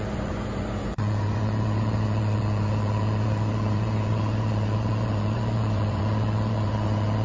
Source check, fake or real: fake